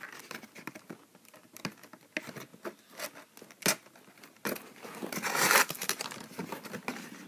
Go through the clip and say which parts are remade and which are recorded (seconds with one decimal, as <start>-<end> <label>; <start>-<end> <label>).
0.0-7.3 recorded